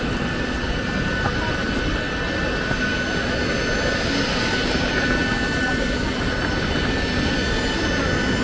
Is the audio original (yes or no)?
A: yes